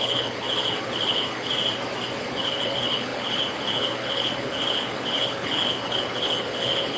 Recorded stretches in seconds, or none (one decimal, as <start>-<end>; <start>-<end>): 1.5-2.2